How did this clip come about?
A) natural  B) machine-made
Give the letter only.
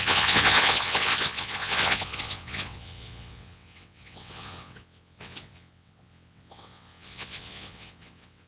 B